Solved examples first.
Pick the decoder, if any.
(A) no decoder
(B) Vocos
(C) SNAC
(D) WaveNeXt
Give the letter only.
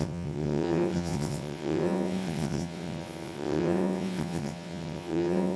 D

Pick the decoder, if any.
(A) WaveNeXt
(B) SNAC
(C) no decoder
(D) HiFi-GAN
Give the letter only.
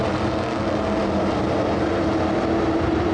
C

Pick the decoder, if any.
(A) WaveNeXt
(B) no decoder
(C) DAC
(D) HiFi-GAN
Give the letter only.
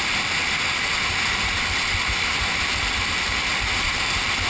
B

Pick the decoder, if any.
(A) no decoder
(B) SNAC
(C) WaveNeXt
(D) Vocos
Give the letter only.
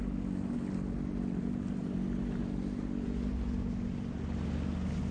A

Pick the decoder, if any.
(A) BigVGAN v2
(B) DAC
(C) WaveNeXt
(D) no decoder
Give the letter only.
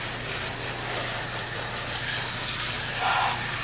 D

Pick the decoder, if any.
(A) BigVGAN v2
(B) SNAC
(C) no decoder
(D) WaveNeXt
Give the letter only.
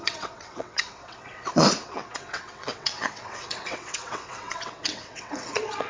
D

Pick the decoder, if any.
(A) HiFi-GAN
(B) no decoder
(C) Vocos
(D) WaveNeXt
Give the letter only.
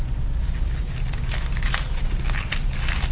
B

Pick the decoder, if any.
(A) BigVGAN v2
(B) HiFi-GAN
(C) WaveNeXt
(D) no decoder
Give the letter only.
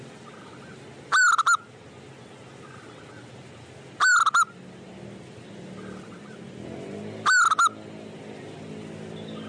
D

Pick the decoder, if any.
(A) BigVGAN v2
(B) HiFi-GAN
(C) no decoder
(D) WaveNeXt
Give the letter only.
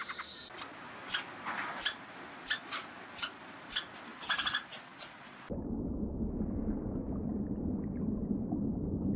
C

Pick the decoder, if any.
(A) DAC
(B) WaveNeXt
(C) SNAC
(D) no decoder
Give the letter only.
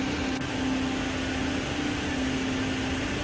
D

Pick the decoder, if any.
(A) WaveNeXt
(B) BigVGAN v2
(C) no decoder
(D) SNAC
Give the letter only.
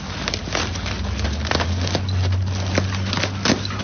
C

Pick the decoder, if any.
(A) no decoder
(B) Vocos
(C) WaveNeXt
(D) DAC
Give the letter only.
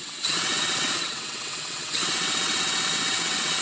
C